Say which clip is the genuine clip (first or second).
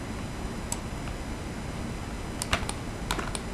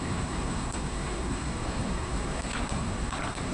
first